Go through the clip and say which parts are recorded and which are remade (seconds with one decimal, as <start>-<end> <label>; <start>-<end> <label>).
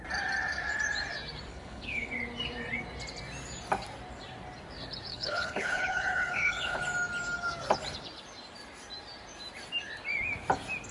0.0-1.5 recorded; 1.5-2.1 remade; 2.1-5.1 recorded; 5.1-6.8 remade; 6.8-10.9 recorded